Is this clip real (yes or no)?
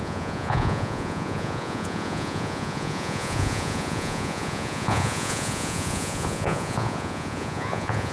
no